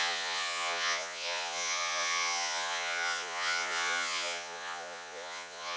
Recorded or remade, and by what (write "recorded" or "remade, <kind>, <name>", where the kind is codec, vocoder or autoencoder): remade, vocoder, Vocos